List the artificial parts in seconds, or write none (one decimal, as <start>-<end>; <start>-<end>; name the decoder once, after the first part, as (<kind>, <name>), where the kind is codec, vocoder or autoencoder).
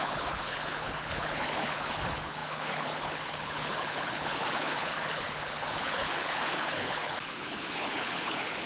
0.0-8.7 (codec, HILCodec)